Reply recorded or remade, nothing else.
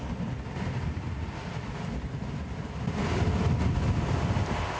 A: recorded